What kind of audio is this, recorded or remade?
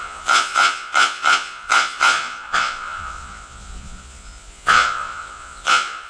remade